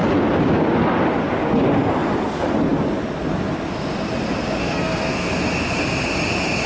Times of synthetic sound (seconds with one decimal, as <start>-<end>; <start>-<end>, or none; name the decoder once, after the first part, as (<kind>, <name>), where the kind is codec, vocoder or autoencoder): 4.6-5.3 (codec, SNAC)

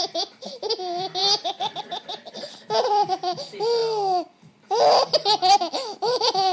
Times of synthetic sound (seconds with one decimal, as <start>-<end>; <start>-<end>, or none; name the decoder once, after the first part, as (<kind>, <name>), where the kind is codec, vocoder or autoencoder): none

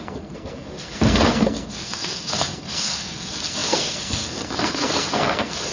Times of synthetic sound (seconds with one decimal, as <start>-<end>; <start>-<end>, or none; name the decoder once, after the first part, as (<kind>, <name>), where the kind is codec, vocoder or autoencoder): 0.0-5.7 (codec, SNAC)

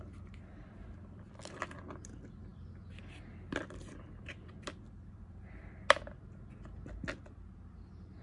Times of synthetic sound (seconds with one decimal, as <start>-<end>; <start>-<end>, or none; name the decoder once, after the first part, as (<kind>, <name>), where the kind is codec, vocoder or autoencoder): none

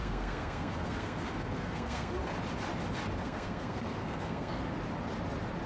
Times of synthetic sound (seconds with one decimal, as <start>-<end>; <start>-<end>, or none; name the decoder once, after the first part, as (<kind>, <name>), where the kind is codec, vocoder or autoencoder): 0.0-2.1 (codec, SNAC); 3.2-4.6

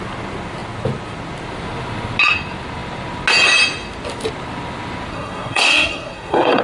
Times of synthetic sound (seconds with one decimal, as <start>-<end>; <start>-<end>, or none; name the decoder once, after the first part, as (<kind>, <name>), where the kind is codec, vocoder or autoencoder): 5.1-6.6 (codec, SNAC)